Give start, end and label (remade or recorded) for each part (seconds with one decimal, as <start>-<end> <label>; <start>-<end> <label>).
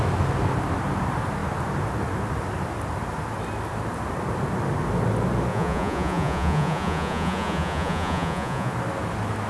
0.0-5.5 recorded; 5.5-8.7 remade; 8.7-9.5 recorded